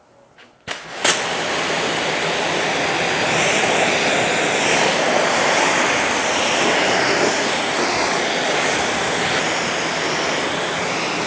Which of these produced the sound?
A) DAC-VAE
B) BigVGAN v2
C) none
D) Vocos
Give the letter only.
C